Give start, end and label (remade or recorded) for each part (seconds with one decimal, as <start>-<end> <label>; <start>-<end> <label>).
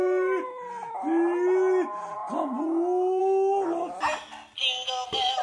0.0-5.4 recorded